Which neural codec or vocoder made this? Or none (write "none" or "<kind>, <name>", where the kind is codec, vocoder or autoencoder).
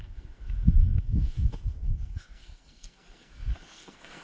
codec, SNAC